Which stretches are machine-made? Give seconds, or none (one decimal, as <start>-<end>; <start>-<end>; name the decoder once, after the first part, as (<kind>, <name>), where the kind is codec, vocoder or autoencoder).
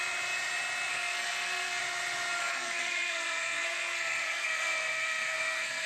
0.9-1.8 (codec, SNAC); 2.4-5.9